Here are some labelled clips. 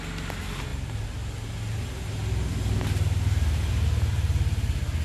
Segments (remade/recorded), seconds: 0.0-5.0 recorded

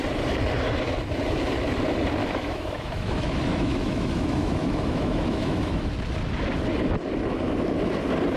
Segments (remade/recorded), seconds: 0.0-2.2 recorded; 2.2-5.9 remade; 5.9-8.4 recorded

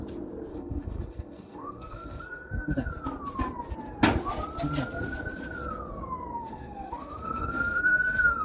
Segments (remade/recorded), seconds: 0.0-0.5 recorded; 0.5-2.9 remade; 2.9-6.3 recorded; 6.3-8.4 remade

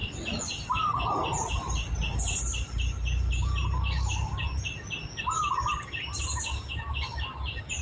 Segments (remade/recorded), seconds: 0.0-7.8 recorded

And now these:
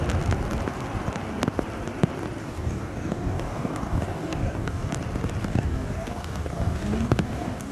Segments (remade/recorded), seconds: 0.0-2.4 recorded; 2.4-4.9 remade; 4.9-5.4 recorded; 5.4-7.7 remade

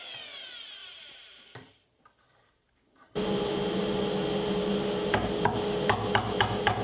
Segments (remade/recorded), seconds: 0.0-0.8 recorded; 0.8-4.0 remade; 4.0-6.8 recorded